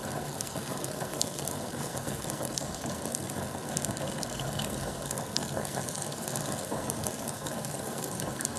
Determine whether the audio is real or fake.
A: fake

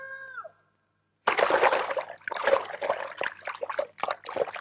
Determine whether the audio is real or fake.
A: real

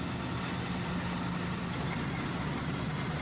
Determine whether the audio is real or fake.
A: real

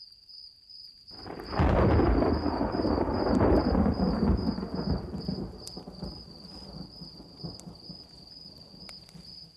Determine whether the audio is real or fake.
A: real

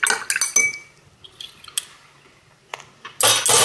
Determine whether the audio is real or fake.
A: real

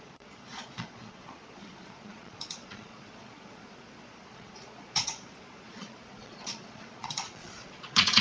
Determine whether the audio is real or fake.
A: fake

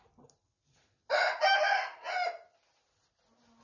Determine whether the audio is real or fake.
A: real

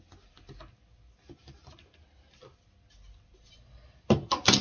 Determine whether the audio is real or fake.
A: real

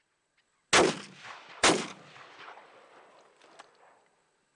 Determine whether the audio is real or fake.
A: real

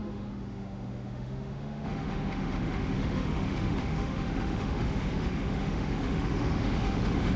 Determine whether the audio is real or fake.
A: fake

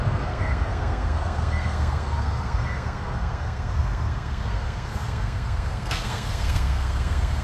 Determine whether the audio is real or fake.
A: fake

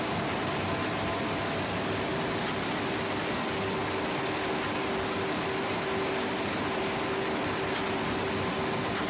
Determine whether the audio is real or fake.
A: real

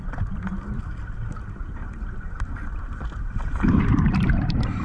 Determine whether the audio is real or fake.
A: real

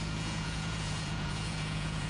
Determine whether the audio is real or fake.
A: fake